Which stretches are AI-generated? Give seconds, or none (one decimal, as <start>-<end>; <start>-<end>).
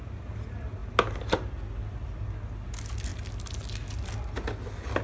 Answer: none